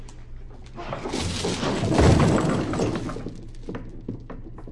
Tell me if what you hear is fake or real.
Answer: real